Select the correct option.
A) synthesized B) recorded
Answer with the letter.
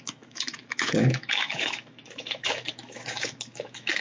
A